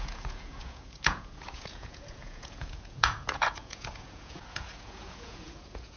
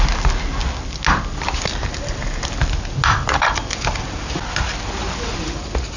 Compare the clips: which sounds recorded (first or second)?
second